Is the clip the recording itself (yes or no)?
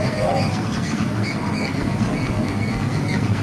no